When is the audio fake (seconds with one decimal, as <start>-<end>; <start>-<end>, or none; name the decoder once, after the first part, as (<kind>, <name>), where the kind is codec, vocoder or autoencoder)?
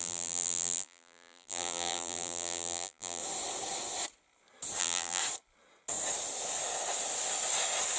0.0-3.2 (vocoder, BigVGAN v2); 4.8-5.2